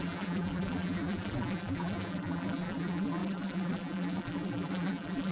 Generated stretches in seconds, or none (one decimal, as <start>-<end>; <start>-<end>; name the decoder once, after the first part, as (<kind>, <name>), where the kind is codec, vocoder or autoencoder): 0.0-5.3 (vocoder, BigVGAN v2)